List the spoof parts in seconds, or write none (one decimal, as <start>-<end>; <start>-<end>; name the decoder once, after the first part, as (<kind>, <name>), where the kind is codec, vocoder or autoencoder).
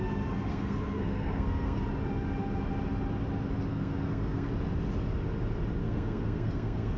0.5-1.8 (codec, SNAC); 3.7-4.5; 5.8-7.0